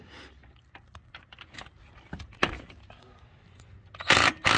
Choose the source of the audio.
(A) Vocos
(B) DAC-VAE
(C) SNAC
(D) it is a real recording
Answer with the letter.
D